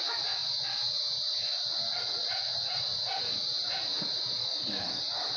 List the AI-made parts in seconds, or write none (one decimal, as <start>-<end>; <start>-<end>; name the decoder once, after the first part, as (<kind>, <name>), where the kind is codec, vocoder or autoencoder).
4.4-5.0 (codec, DAC)

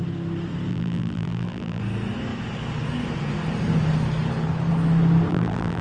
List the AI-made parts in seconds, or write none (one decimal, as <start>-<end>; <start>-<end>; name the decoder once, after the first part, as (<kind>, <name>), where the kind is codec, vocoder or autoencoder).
0.7-1.8 (vocoder, BigVGAN v2); 5.3-5.8